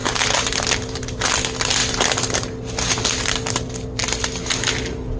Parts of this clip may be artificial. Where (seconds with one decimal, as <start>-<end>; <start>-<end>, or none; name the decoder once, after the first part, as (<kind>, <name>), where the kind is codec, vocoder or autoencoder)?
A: 0.0-1.2 (vocoder, BigVGAN v2)